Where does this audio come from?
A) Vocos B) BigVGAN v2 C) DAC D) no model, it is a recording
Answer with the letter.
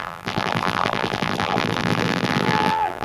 B